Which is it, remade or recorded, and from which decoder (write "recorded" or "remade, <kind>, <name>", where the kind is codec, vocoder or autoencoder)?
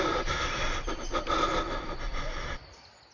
recorded